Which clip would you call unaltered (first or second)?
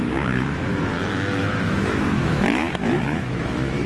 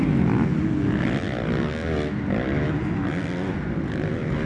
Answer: second